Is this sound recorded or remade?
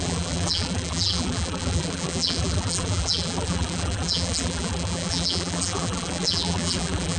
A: remade